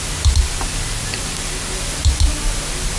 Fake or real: real